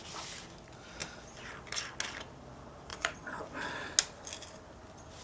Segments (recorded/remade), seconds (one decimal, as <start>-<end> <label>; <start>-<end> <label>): 0.0-2.9 recorded; 2.9-3.4 remade; 3.4-5.2 recorded